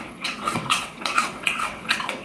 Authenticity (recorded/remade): remade